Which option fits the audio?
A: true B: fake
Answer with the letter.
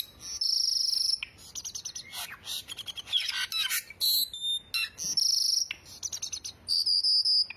A